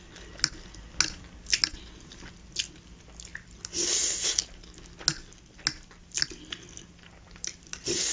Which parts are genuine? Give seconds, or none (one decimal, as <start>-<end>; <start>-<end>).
0.0-8.1